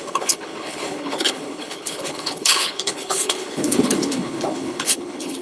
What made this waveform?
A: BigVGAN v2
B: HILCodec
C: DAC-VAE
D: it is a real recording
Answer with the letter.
B